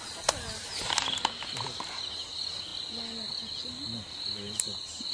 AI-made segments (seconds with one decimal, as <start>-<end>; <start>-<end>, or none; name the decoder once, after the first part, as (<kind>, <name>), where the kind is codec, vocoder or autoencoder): none